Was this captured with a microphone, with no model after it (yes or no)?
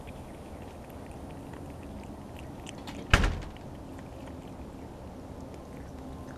yes